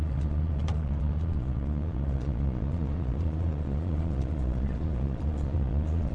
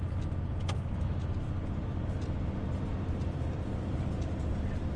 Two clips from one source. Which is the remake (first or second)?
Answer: first